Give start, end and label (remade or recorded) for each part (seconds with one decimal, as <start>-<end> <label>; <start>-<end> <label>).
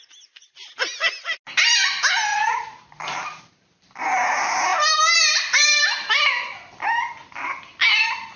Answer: 0.0-2.3 recorded; 2.3-3.4 remade; 3.4-8.4 recorded